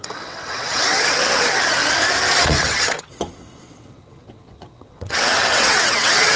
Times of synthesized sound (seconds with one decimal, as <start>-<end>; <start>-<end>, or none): 0.0-1.8; 2.3-6.4